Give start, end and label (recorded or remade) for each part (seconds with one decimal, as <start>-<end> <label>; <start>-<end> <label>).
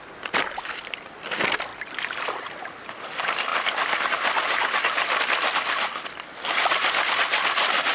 0.0-1.7 remade; 1.7-2.8 recorded; 2.8-3.5 remade; 3.5-5.2 recorded; 5.2-7.9 remade